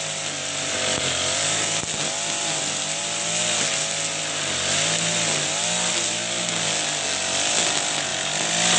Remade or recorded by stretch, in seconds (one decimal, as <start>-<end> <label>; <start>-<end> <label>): 0.0-8.8 recorded